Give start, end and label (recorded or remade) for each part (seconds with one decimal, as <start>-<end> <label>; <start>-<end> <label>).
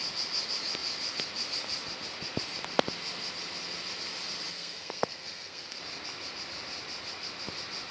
0.0-4.5 recorded; 4.5-5.8 remade; 5.8-7.9 recorded